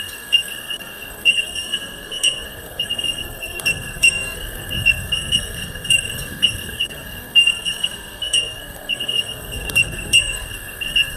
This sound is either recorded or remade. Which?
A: remade